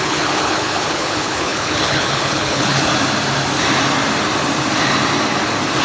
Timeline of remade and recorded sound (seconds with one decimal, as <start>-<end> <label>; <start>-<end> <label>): 0.0-2.9 remade; 2.9-5.8 recorded